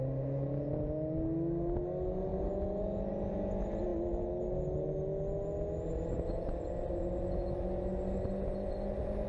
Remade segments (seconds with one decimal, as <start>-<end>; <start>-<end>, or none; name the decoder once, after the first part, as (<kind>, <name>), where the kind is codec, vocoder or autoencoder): none